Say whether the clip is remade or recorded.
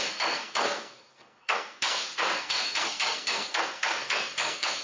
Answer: remade